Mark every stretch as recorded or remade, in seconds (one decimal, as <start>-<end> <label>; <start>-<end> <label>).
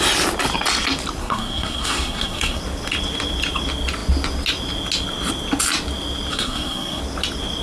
0.0-1.2 recorded; 1.2-2.6 remade; 2.6-6.3 recorded; 6.3-7.0 remade; 7.0-7.6 recorded